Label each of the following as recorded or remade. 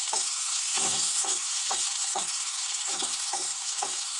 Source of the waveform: remade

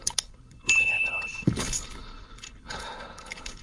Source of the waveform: remade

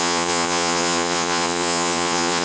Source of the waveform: remade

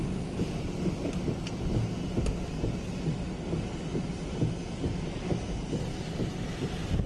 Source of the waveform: recorded